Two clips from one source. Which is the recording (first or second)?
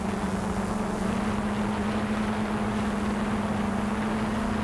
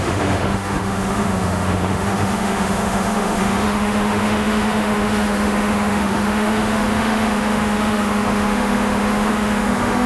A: first